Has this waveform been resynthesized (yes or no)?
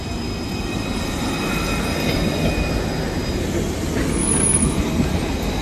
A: no